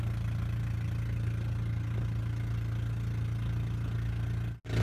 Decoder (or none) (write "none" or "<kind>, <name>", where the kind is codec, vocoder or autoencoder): none